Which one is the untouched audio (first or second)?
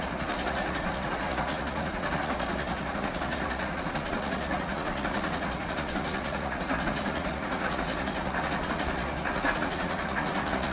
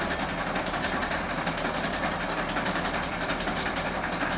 second